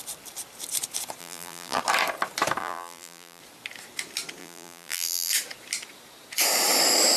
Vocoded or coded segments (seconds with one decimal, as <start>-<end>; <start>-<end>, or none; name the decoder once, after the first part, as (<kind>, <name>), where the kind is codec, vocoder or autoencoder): 1.2-1.8 (vocoder, BigVGAN v2); 2.6-3.4; 4.4-5.3